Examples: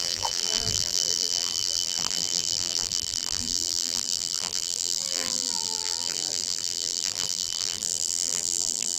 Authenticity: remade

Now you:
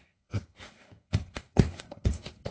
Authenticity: remade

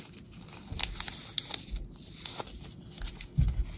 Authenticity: recorded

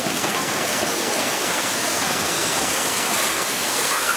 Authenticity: remade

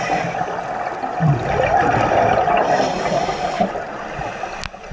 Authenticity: recorded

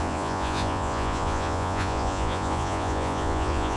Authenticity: remade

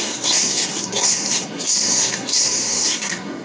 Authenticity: remade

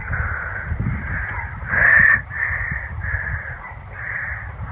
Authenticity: remade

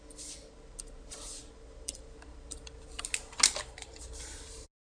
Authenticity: recorded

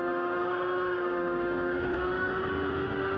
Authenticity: remade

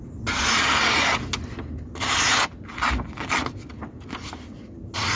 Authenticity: recorded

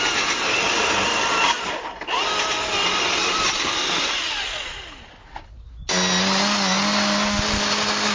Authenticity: recorded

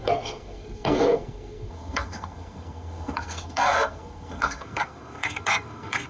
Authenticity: remade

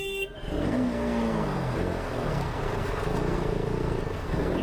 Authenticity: remade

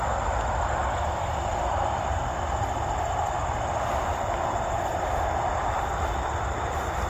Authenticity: recorded